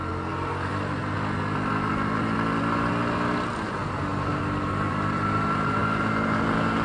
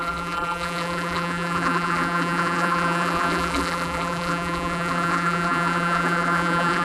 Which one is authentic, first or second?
first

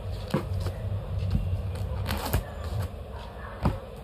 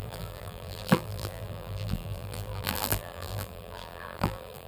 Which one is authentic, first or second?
first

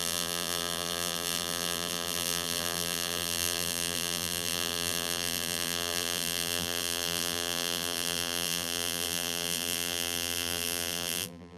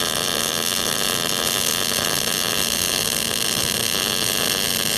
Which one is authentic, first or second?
second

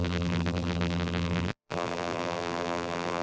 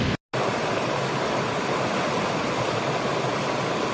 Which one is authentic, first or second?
second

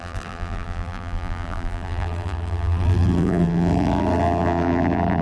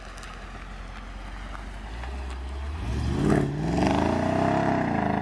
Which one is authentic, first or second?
second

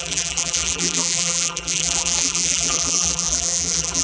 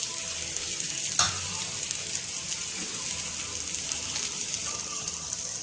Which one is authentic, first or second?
second